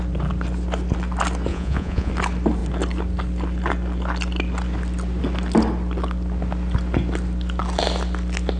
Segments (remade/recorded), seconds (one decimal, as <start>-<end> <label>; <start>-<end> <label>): 0.0-1.5 recorded; 1.5-2.1 remade; 2.1-8.6 recorded

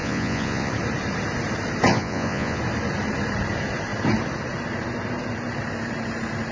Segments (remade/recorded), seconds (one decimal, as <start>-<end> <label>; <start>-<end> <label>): 0.0-0.7 remade; 0.7-1.9 recorded; 1.9-2.6 remade; 2.6-6.5 recorded